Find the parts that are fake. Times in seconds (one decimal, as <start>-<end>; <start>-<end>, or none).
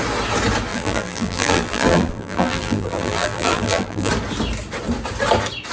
0.7-4.1